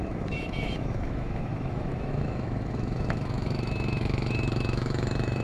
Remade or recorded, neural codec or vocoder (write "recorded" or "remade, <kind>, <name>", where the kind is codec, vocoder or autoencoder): remade, autoencoder, DAC-VAE